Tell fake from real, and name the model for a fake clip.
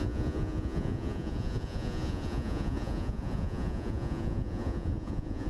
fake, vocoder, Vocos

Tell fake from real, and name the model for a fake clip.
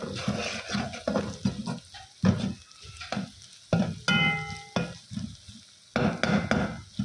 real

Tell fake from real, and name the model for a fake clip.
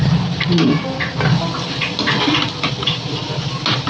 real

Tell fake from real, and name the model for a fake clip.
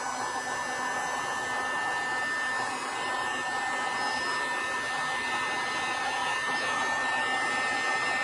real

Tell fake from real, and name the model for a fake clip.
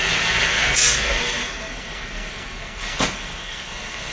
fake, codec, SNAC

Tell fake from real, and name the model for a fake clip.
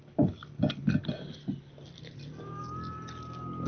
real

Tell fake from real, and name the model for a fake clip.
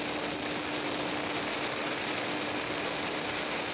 real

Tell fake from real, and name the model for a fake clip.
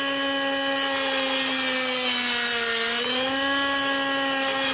real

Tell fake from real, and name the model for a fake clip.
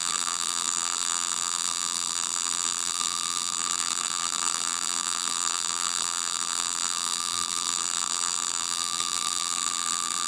fake, vocoder, BigVGAN v2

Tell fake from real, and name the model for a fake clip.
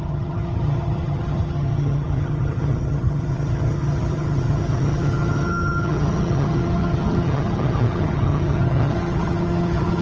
fake, vocoder, HiFi-GAN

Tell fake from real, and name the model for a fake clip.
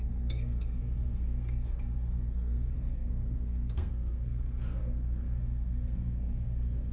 fake, codec, SNAC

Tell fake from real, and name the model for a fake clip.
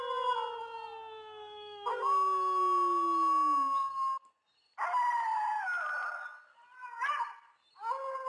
real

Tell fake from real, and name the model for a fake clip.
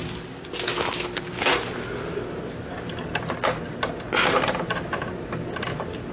real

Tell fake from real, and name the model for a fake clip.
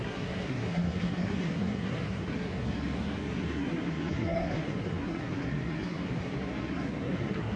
fake, codec, SNAC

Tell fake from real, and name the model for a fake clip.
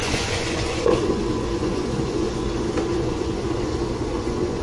fake, vocoder, Vocos